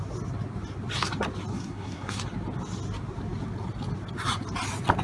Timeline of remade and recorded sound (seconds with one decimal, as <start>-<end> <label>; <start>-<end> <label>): 0.0-1.5 recorded; 1.5-2.2 remade; 2.2-5.0 recorded